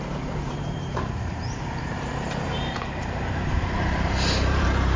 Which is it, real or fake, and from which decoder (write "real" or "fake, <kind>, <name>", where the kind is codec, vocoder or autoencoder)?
fake, vocoder, BigVGAN v2